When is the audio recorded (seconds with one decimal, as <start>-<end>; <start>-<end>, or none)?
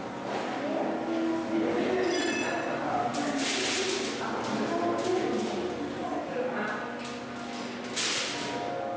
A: 0.0-9.0